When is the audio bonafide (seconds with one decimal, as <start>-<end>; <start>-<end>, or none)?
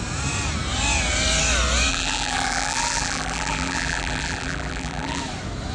0.0-1.9; 5.2-5.7